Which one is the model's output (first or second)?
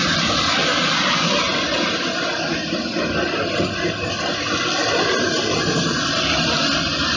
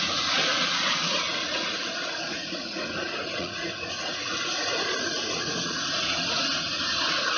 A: second